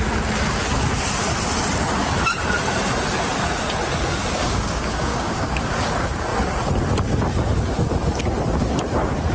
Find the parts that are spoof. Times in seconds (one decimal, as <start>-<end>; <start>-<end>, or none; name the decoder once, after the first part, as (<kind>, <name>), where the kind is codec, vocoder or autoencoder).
4.4-5.8 (codec, DAC)